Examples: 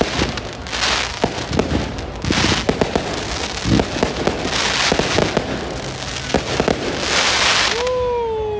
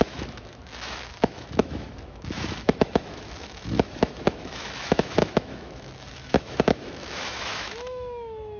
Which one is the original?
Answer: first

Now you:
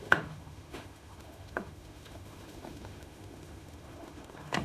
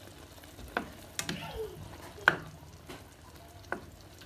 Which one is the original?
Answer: second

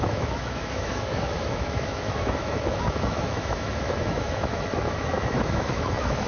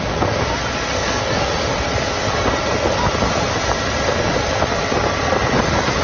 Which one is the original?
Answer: second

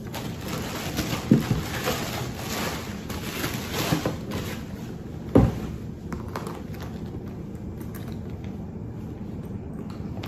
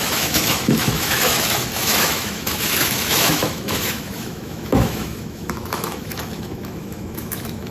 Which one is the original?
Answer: first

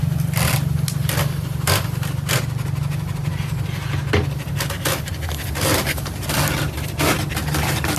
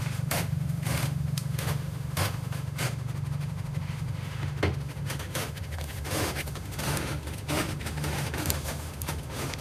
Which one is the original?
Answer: first